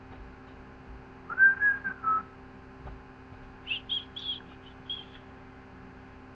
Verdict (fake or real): real